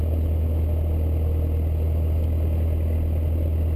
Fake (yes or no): no